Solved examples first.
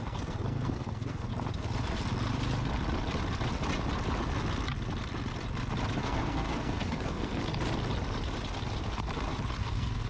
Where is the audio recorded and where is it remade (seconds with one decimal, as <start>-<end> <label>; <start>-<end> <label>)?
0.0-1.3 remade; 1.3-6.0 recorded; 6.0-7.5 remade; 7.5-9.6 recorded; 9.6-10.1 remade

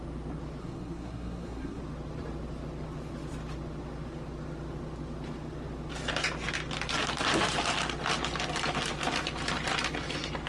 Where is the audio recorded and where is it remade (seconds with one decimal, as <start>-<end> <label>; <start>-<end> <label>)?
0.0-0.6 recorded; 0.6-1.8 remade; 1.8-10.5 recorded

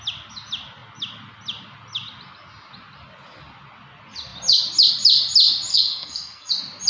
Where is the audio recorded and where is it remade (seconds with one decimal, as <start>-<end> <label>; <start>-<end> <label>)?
0.0-5.7 recorded; 5.7-6.5 remade; 6.5-6.9 recorded